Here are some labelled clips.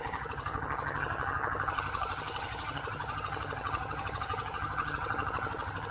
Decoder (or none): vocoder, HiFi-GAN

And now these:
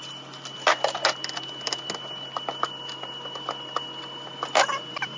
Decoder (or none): none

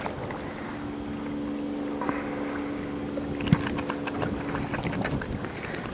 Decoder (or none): none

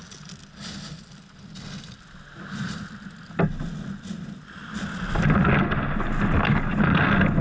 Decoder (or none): none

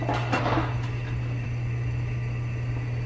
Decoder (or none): none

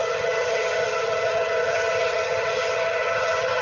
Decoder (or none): vocoder, HiFi-GAN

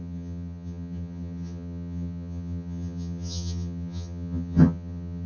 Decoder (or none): vocoder, HiFi-GAN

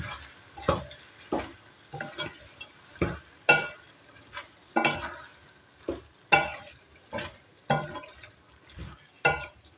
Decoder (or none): none